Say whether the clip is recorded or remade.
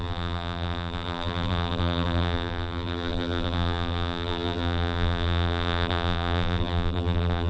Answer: remade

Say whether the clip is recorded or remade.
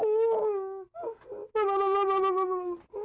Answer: recorded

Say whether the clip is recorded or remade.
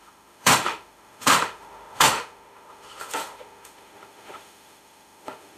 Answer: remade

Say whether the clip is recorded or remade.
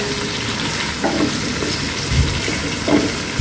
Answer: recorded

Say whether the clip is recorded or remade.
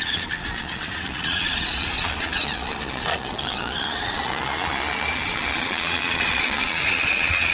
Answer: remade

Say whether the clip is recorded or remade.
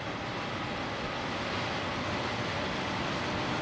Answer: recorded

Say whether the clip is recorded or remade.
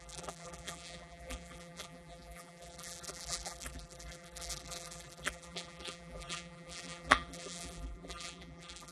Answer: remade